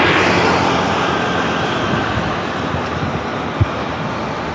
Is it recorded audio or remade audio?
recorded